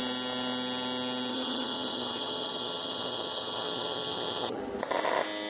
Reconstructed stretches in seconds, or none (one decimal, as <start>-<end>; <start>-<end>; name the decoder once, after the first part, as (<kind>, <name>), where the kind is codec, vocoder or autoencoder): 1.3-4.6 (vocoder, HiFi-GAN)